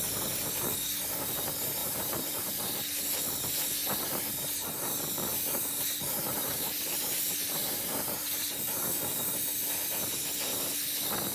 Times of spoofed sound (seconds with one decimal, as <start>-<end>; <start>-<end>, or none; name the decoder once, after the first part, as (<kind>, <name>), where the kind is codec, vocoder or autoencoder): 1.8-2.6 (vocoder, BigVGAN v2); 5.3-9.7